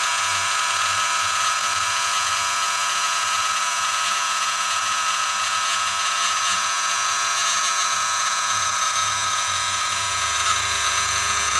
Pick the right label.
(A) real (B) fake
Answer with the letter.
B